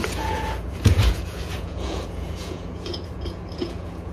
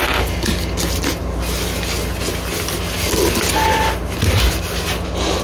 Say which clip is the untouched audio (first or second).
second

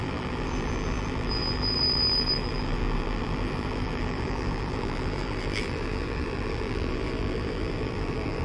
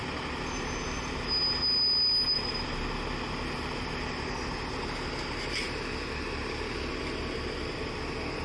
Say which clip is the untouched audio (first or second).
second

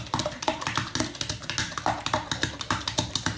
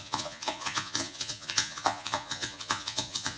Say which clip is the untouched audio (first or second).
first